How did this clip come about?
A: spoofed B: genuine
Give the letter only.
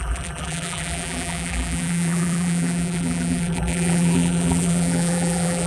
A